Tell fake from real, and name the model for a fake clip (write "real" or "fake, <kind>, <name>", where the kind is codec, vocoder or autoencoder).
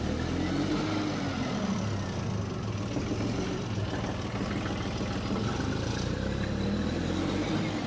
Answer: real